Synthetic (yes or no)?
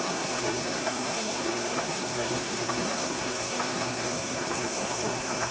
yes